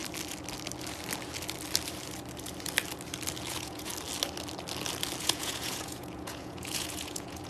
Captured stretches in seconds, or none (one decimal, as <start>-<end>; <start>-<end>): 0.0-3.5; 3.9-5.2